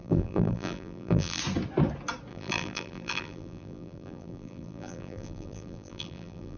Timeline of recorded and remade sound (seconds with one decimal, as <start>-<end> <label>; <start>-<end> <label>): 0.0-1.4 remade; 1.4-2.3 recorded; 2.3-6.6 remade

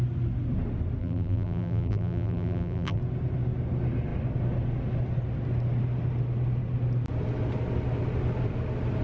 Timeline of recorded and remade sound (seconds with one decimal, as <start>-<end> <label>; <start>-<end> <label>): 0.0-1.0 recorded; 1.0-3.0 remade; 3.0-9.0 recorded

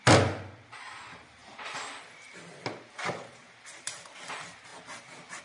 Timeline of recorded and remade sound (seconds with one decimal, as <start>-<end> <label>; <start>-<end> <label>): 0.0-5.4 recorded

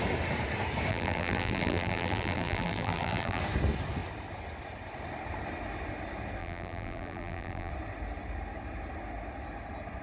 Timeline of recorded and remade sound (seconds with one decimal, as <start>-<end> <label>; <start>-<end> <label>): 0.0-0.9 recorded; 0.9-3.4 remade; 3.4-6.4 recorded; 6.4-7.7 remade; 7.7-10.0 recorded

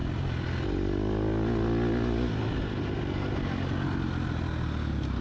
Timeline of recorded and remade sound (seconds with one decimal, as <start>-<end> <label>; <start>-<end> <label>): 0.0-3.1 remade; 3.1-5.2 recorded

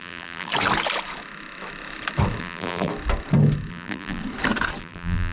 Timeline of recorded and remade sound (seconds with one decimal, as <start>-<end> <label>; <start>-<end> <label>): 0.0-0.5 remade; 0.5-2.4 recorded; 2.4-2.9 remade; 2.9-3.7 recorded; 3.7-4.2 remade; 4.2-4.8 recorded; 4.8-5.3 remade

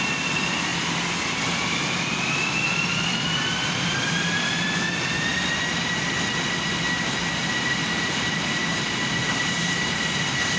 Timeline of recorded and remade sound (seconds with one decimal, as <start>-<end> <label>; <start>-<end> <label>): 0.0-5.3 remade; 5.3-7.4 recorded; 7.4-8.6 remade; 8.6-9.2 recorded; 9.2-10.6 remade

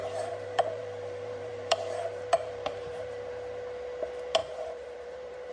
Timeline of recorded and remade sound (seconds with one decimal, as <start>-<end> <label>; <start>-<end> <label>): 0.0-3.3 remade; 3.3-4.4 recorded; 4.4-5.5 remade